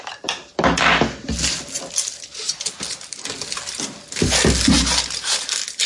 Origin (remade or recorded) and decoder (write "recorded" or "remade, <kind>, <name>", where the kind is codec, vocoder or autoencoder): recorded